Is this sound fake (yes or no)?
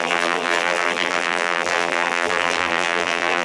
yes